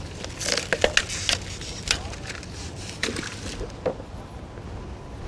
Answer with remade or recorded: recorded